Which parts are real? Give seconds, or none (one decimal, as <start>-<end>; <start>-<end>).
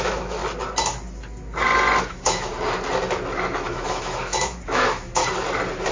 0.4-2.0; 2.5-3.5; 5.2-5.9